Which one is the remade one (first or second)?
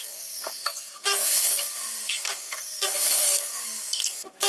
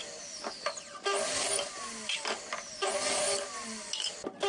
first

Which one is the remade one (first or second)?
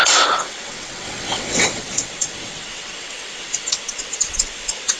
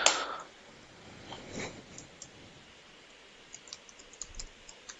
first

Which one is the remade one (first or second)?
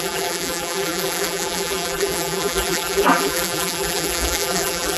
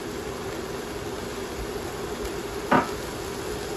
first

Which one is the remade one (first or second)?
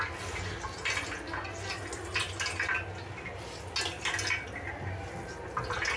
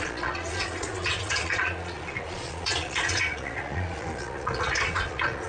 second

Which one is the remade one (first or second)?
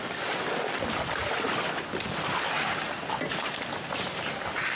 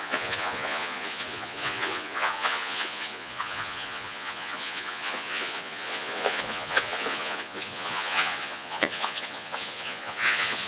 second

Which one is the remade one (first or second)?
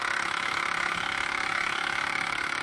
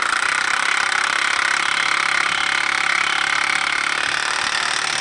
first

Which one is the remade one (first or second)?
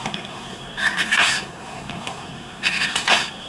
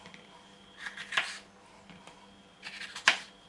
first